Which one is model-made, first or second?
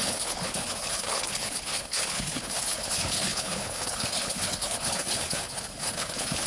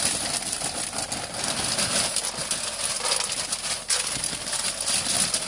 first